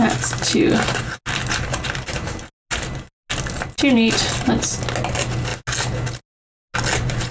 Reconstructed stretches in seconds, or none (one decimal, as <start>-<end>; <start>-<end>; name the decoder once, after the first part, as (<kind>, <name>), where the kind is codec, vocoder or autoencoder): none